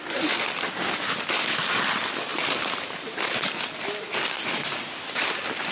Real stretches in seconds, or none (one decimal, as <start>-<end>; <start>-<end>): 0.0-5.7